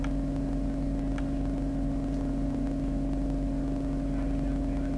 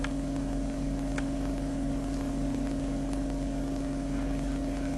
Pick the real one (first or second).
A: first